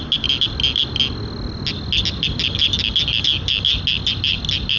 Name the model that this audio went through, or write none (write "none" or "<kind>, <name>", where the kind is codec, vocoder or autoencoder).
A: none